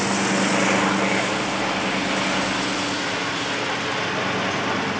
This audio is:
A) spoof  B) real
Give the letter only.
B